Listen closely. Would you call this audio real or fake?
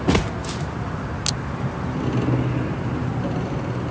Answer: real